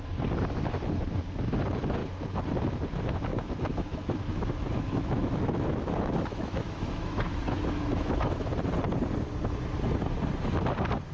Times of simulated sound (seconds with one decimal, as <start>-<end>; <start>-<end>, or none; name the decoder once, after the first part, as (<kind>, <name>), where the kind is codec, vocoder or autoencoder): 3.3-8.5 (autoencoder, DAC-VAE)